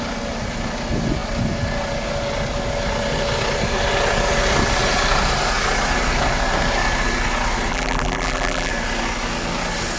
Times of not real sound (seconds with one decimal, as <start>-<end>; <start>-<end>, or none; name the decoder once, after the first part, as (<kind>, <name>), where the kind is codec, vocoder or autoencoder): 7.7-8.7 (vocoder, BigVGAN v2)